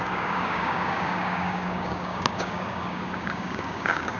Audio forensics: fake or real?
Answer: fake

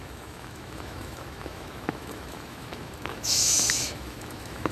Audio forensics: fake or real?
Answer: fake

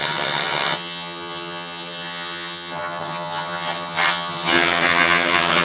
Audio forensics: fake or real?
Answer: fake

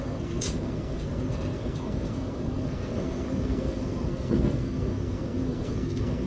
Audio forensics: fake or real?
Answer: fake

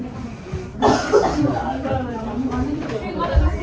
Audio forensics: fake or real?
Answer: real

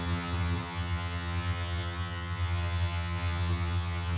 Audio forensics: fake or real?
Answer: fake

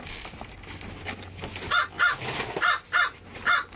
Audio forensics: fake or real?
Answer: real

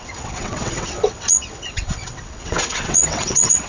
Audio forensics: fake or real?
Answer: fake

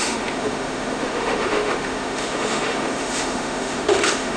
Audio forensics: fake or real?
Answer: fake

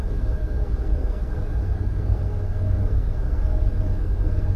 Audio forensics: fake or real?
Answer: fake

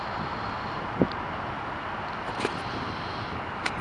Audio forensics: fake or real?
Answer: real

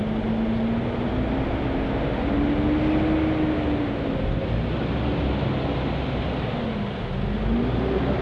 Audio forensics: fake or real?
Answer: real